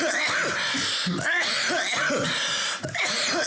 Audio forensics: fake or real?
real